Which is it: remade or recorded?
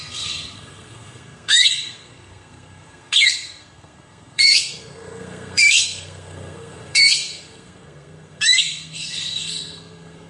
remade